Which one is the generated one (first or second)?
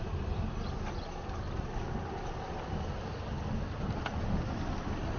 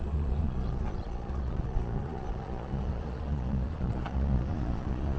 second